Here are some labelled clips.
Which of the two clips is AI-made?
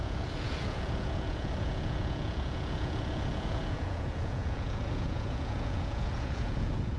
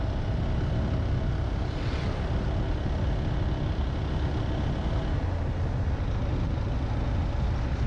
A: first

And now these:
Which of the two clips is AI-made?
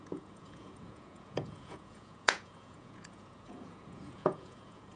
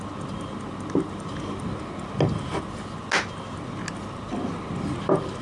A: first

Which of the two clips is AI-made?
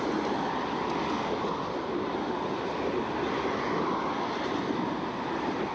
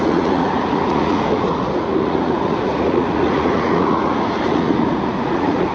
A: second